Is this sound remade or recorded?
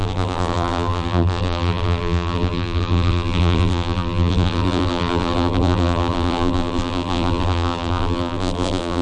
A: remade